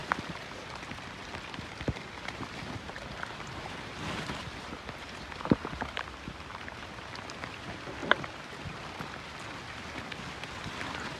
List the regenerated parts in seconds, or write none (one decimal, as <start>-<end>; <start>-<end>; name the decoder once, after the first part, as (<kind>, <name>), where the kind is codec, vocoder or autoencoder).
0.0-11.2 (vocoder, BigVGAN v2)